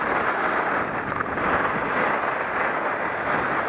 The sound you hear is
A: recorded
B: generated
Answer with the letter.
A